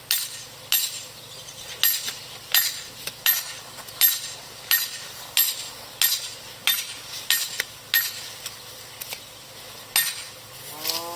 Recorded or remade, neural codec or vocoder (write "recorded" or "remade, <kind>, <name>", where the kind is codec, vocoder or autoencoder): recorded